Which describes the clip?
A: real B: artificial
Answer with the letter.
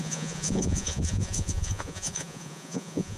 B